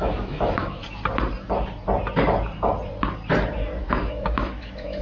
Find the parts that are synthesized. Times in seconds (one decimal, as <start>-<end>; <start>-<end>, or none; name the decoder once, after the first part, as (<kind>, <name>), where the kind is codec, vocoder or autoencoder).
0.0-0.8 (autoencoder, DAC-VAE); 3.8-5.0